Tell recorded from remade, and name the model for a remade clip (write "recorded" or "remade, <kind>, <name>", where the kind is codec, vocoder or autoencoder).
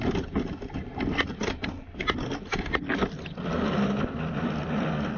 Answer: recorded